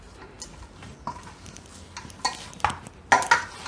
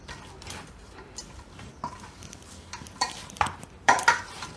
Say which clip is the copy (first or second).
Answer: second